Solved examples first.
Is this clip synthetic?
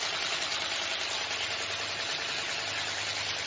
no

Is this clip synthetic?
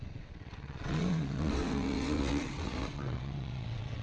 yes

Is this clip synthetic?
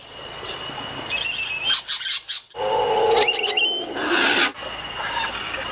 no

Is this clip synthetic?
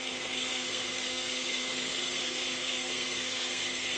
yes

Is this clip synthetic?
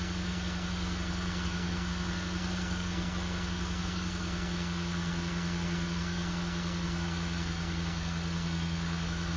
yes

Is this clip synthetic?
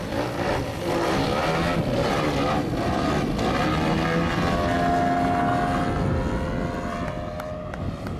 no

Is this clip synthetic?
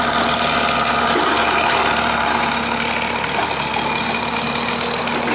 no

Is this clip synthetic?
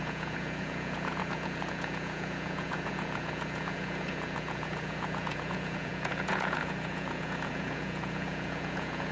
yes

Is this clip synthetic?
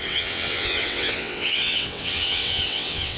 yes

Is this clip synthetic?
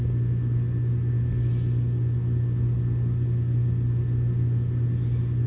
no